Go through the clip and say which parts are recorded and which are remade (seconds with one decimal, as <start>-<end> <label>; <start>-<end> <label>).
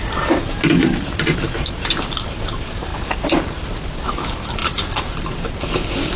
0.0-2.9 recorded; 2.9-3.6 remade; 3.6-6.2 recorded